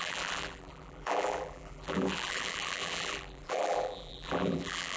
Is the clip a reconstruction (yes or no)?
yes